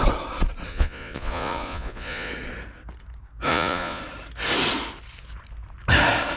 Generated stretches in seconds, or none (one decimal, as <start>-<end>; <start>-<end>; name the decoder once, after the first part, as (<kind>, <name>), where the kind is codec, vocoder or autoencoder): 0.7-2.3 (vocoder, Vocos); 3.5-4.0